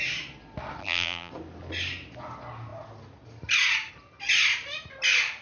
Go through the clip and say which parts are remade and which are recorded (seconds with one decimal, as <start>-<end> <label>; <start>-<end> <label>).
0.0-0.8 recorded; 0.8-1.3 remade; 1.3-5.4 recorded